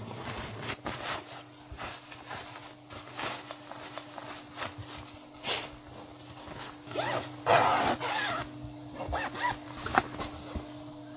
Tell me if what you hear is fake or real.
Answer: real